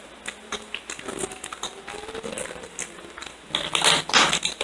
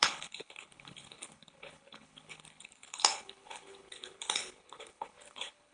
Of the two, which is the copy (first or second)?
second